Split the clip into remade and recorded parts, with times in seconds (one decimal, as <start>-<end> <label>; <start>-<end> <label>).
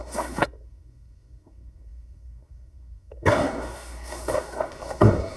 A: 0.0-5.4 remade